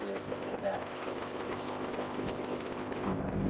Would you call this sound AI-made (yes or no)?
yes